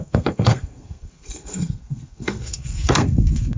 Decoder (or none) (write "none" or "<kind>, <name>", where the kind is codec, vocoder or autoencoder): codec, SNAC